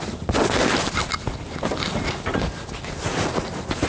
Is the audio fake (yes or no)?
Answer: no